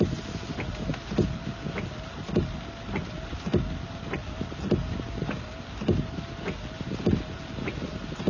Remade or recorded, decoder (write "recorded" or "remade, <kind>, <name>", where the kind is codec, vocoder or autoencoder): recorded